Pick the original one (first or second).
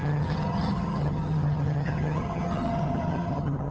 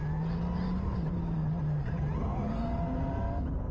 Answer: second